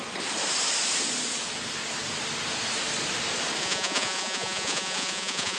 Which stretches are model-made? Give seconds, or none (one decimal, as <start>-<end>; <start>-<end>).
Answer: 3.6-5.6